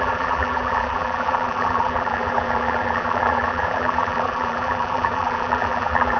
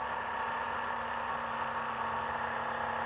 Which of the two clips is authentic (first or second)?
second